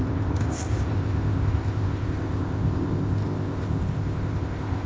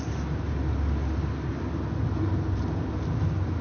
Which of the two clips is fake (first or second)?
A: first